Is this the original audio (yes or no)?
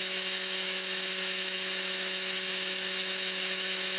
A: no